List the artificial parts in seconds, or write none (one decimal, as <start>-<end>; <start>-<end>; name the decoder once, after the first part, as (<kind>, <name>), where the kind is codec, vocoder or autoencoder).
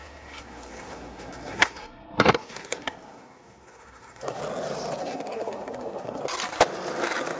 0.0-4.4 (codec, SNAC); 5.0-6.2